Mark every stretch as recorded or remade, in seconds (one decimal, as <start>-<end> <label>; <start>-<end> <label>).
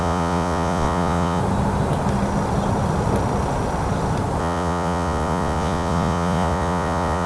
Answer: 0.0-1.4 remade; 1.4-4.4 recorded; 4.4-7.3 remade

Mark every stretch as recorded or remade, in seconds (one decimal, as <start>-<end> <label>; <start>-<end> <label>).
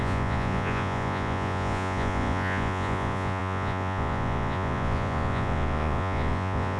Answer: 0.0-6.8 remade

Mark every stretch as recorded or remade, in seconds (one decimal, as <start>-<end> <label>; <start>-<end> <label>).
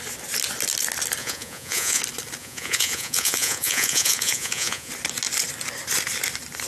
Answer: 0.0-1.2 recorded; 1.2-2.0 remade; 2.0-2.4 recorded; 2.4-4.9 remade; 4.9-6.7 recorded